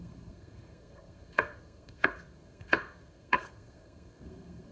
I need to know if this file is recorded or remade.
remade